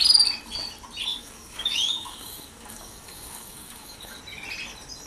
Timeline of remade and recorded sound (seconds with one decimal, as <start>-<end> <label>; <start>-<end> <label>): 0.0-1.1 recorded; 1.1-4.2 remade; 4.2-5.1 recorded